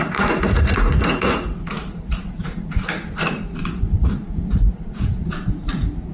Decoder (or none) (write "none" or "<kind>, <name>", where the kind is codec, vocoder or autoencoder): vocoder, Vocos